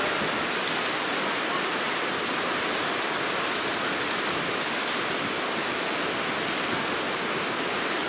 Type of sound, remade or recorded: recorded